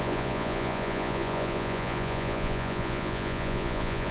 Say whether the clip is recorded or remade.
remade